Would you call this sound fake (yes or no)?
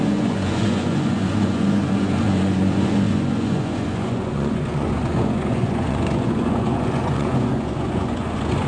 yes